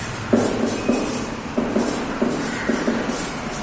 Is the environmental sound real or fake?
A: fake